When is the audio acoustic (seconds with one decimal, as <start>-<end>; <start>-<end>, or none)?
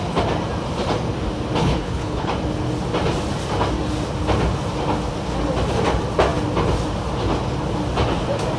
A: 0.0-1.6; 2.3-8.6